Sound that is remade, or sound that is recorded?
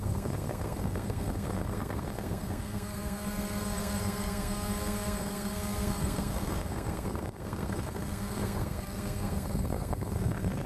remade